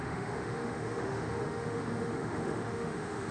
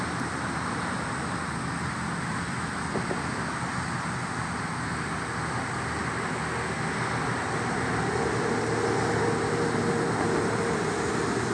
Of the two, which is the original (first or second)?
second